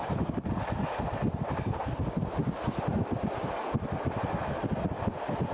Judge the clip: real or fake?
real